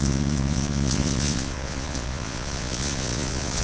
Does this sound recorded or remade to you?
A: remade